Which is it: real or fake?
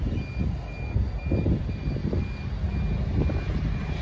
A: real